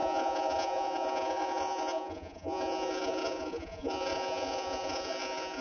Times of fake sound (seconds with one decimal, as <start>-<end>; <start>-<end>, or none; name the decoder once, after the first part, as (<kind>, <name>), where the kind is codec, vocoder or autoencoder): 0.0-5.6 (vocoder, Vocos)